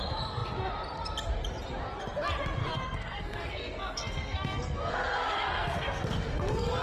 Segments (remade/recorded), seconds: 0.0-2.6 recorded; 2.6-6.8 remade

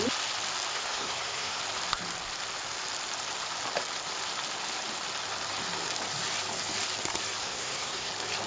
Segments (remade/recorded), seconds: 0.0-0.7 recorded; 0.7-1.6 remade; 1.6-7.4 recorded; 7.4-8.1 remade; 8.1-8.5 recorded

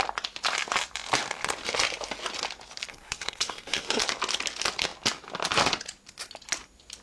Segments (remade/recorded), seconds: 0.0-2.9 recorded; 2.9-4.0 remade; 4.0-7.0 recorded

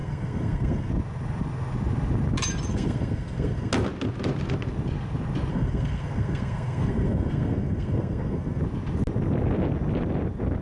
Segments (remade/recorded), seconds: 0.0-0.9 remade; 0.9-2.7 recorded; 2.7-3.7 remade; 3.7-5.5 recorded; 5.5-8.6 remade; 8.6-10.6 recorded

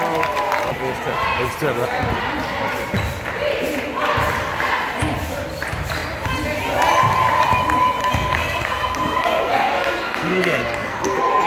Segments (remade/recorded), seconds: 0.0-8.0 recorded; 8.0-11.5 remade

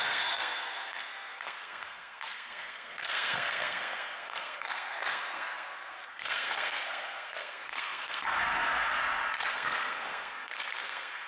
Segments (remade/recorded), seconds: 0.0-9.0 remade; 9.0-9.5 recorded; 9.5-11.3 remade